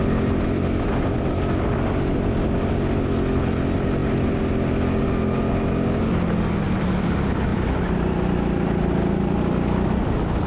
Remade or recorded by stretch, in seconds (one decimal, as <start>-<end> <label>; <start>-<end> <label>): 0.0-10.5 recorded